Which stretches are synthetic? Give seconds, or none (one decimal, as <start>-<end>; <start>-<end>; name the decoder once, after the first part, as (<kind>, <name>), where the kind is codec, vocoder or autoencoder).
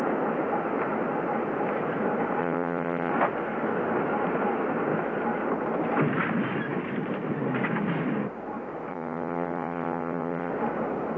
2.4-3.1 (vocoder, HiFi-GAN); 8.9-10.5